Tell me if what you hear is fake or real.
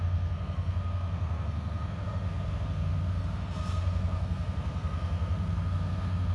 fake